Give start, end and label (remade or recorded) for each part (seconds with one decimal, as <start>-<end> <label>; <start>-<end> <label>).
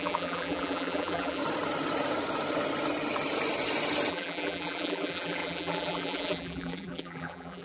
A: 0.0-1.4 remade; 1.4-4.1 recorded; 4.1-7.6 remade